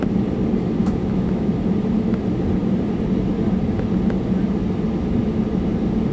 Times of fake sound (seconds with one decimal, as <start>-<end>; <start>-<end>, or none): 0.8-1.5